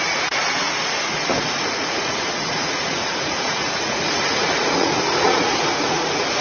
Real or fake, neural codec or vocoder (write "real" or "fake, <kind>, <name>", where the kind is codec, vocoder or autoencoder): fake, vocoder, Vocos